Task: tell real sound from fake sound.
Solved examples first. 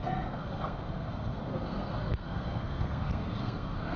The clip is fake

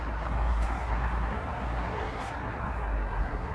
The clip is fake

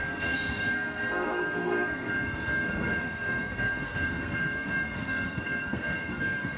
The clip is fake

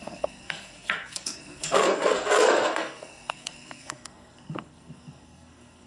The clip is fake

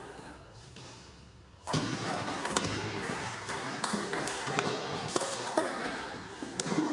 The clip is fake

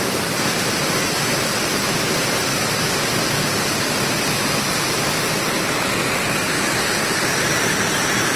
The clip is real